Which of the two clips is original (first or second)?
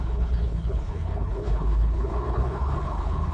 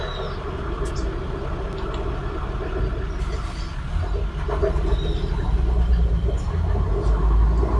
second